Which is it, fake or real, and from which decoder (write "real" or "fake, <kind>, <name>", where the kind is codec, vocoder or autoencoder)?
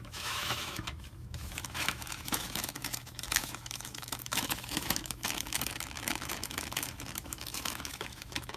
fake, autoencoder, DAC-VAE